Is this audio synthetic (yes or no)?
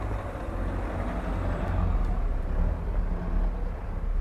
no